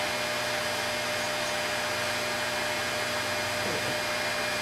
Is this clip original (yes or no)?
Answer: yes